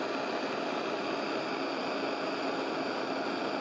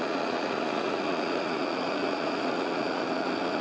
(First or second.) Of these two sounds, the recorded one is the first